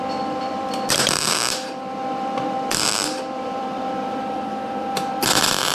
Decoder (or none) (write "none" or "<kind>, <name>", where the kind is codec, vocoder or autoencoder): vocoder, BigVGAN v2